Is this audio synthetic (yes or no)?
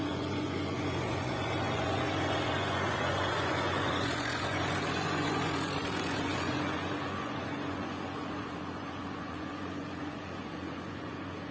yes